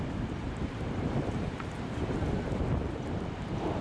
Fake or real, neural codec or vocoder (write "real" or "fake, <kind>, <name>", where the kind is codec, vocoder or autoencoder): fake, vocoder, BigVGAN v2